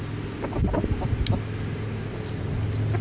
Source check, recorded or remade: recorded